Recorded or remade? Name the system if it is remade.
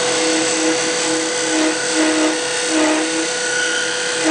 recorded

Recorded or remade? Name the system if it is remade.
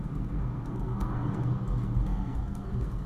remade, codec, SNAC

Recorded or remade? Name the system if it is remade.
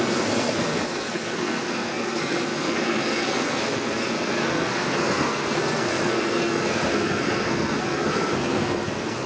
remade, codec, SNAC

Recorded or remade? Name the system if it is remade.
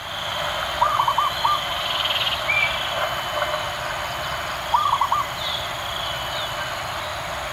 recorded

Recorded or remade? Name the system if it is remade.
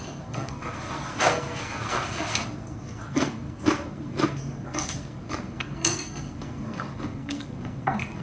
remade, codec, SNAC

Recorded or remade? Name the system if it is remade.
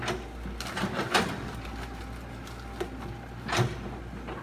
recorded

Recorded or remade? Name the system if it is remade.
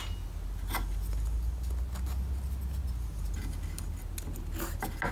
recorded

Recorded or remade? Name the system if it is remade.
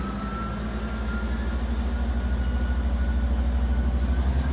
recorded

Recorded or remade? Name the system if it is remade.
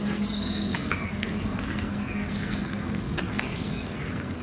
remade, codec, SNAC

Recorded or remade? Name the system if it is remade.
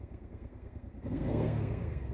remade, codec, SNAC